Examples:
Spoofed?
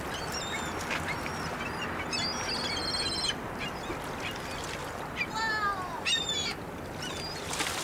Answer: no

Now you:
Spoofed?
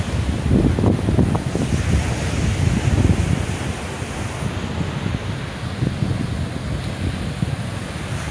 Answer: no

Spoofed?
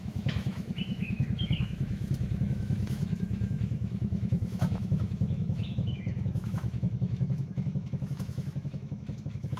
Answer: yes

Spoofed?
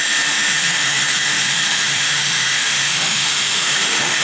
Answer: yes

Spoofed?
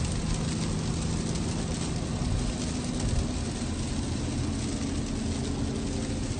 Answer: no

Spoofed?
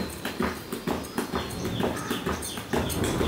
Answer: no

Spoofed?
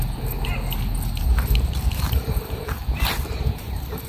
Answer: no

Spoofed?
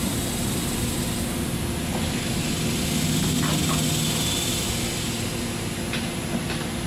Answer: no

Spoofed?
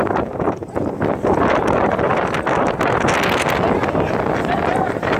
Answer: no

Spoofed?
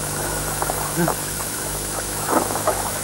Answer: yes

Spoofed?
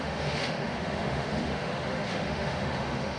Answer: yes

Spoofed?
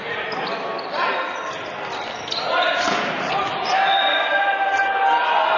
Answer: no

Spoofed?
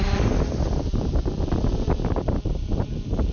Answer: no